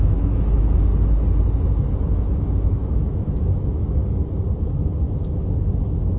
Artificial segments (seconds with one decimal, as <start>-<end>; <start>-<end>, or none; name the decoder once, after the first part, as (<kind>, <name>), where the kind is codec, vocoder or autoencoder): 0.0-0.9 (autoencoder, DAC-VAE); 1.7-4.0; 4.6-6.2